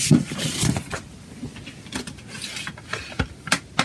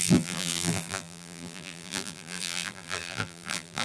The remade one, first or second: second